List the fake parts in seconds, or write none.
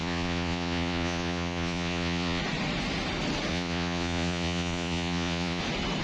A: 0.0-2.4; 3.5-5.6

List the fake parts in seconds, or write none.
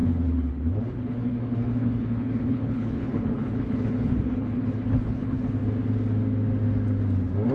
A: 0.0-5.6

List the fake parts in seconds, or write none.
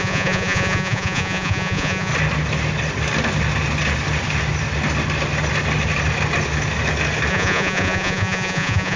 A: 0.0-2.1; 7.3-9.0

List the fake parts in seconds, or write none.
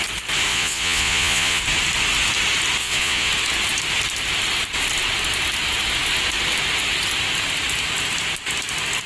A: 0.5-1.6; 2.8-3.3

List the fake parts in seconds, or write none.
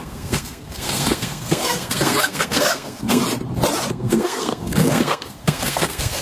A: 0.0-3.2; 3.9-6.2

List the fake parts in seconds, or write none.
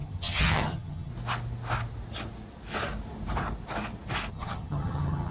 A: 0.0-1.1; 4.3-5.3